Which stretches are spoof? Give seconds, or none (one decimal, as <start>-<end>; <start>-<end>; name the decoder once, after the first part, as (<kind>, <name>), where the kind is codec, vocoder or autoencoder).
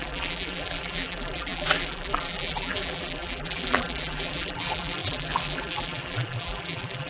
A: 0.0-7.1 (vocoder, BigVGAN v2)